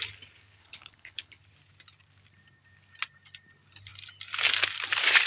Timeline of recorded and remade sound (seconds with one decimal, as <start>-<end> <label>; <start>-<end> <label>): 0.0-0.6 recorded; 0.6-1.4 remade; 1.4-5.3 recorded